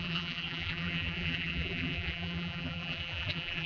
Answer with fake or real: fake